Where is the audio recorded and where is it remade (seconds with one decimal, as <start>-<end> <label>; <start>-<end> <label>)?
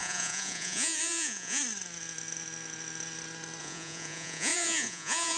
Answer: 0.0-1.6 remade; 1.6-3.6 recorded; 3.6-5.4 remade